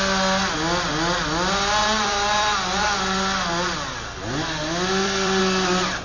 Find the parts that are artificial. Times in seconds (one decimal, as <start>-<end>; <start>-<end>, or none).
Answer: 1.8-5.4